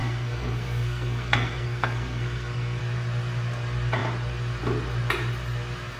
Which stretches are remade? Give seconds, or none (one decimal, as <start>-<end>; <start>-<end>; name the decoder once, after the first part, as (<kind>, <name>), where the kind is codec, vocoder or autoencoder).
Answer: 0.0-2.8 (codec, SNAC)